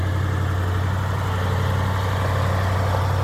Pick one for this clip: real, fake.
real